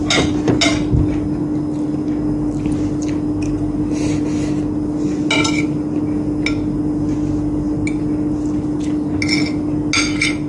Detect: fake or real real